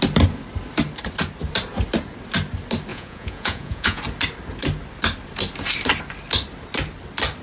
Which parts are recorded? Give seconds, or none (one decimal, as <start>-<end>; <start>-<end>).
0.0-2.9; 4.0-7.4